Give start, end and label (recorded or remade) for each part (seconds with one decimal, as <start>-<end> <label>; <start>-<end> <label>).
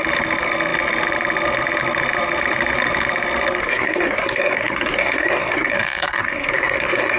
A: 0.0-3.6 recorded; 3.6-7.2 remade